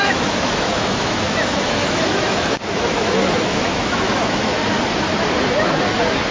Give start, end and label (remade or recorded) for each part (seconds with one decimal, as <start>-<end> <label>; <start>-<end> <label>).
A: 0.0-4.6 remade; 4.6-6.3 recorded